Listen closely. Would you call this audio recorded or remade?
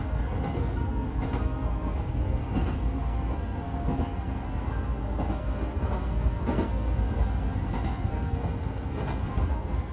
remade